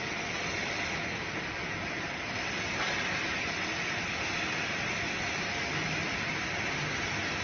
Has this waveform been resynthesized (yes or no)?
no